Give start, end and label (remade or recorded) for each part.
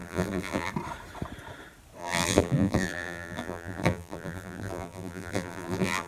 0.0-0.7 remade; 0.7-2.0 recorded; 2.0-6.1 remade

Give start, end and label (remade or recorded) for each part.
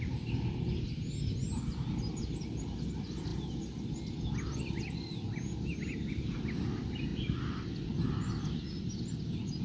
0.0-9.6 recorded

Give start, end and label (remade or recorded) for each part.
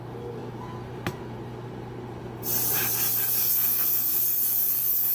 0.0-3.4 recorded; 3.4-5.1 remade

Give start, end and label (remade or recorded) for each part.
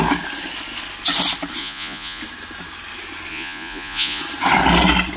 0.0-1.6 recorded; 1.6-2.2 remade; 2.2-3.3 recorded; 3.3-4.2 remade; 4.2-5.2 recorded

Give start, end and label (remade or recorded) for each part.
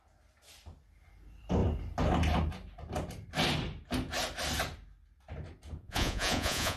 0.0-5.8 recorded; 5.8-6.8 remade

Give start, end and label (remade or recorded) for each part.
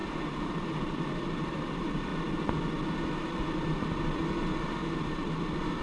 0.0-2.1 remade; 2.1-5.8 recorded